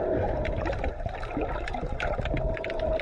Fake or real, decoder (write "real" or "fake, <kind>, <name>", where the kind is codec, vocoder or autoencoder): real